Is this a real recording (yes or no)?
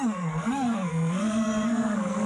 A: no